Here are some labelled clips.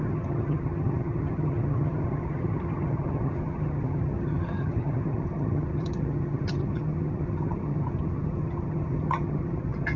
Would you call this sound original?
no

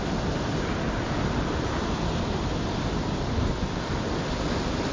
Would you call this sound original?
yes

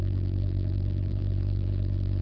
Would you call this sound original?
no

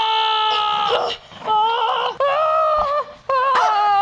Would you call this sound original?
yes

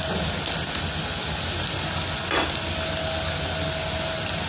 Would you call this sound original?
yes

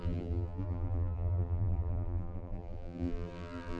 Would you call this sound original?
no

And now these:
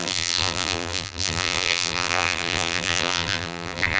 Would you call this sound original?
no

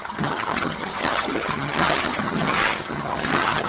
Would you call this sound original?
no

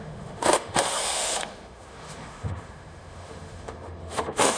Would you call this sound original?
no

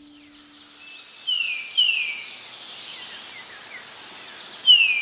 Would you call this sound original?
yes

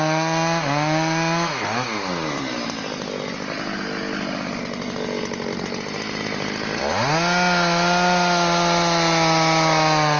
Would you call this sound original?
yes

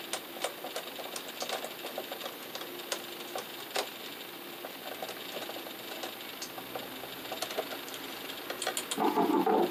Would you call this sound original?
yes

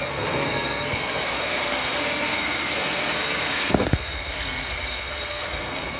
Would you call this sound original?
no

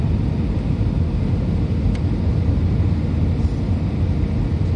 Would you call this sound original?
yes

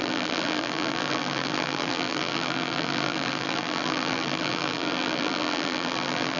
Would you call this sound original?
no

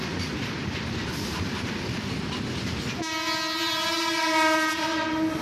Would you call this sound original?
yes